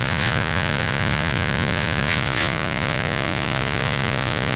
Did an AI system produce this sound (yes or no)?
yes